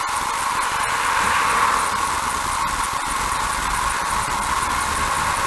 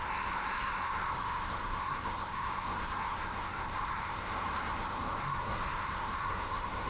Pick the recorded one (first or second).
first